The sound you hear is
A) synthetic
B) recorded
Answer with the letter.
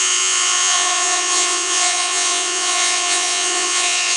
A